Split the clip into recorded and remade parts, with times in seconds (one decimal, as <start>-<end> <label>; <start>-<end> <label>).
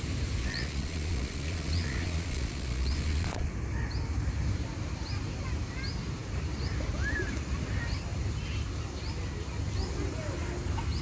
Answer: 0.0-0.4 recorded; 0.4-3.5 remade; 3.5-11.0 recorded